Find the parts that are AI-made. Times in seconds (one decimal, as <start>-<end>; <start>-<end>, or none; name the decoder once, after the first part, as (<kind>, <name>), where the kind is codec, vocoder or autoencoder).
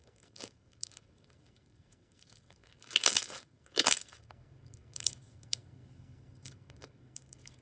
0.0-7.6 (codec, SNAC)